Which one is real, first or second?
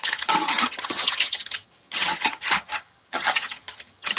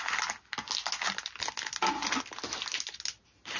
second